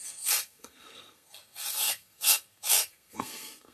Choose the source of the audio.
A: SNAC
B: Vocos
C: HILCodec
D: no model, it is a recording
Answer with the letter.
A